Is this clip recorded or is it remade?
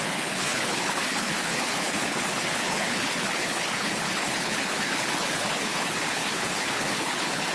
remade